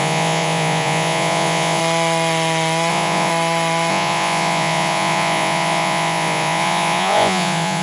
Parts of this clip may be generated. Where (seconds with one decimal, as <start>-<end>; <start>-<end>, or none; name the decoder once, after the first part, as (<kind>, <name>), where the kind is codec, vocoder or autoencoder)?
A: 0.0-1.8 (vocoder, Vocos); 2.9-3.3; 3.9-7.8

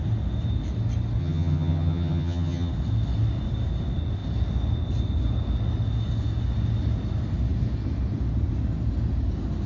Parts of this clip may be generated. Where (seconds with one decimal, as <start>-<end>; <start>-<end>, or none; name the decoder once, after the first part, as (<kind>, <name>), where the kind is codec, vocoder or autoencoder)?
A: 1.2-2.7 (vocoder, HiFi-GAN)